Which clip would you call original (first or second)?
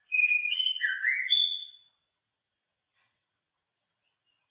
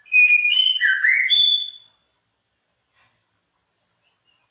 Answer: second